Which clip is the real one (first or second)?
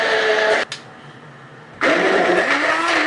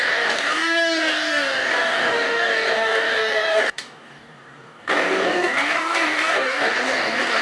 first